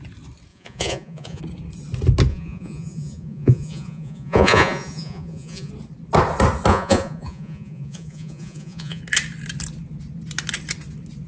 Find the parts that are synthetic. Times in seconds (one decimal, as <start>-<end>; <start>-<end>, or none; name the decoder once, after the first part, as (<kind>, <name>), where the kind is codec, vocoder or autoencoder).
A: 0.5-1.4 (vocoder, Vocos); 2.3-5.7; 6.7-9.0